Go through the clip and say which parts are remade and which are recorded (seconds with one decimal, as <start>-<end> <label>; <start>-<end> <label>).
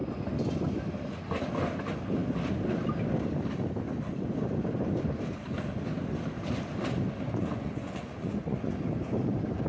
0.0-7.4 recorded; 7.4-8.7 remade; 8.7-9.7 recorded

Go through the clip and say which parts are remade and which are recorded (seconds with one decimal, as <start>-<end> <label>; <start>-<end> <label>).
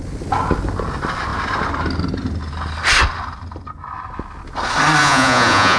0.0-5.0 recorded; 5.0-5.8 remade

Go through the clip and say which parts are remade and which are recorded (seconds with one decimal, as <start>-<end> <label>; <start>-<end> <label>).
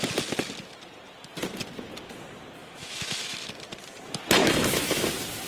0.0-2.6 recorded; 2.6-3.5 remade; 3.5-4.4 recorded; 4.4-5.1 remade; 5.1-5.5 recorded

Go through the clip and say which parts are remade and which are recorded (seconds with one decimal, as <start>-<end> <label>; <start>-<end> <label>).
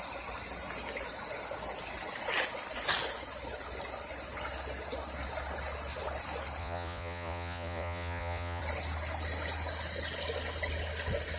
0.0-6.6 recorded; 6.6-8.6 remade; 8.6-11.4 recorded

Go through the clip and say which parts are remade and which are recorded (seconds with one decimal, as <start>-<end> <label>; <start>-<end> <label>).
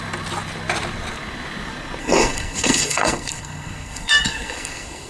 0.0-2.0 recorded; 2.0-5.1 remade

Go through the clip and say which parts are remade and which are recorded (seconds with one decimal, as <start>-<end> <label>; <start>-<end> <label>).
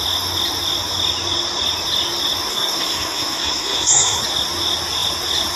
0.0-2.5 recorded; 2.5-4.2 remade; 4.2-5.6 recorded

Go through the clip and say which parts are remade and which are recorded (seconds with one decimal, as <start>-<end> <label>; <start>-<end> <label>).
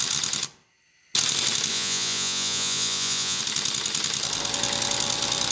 0.0-1.7 recorded; 1.7-3.4 remade; 3.4-5.5 recorded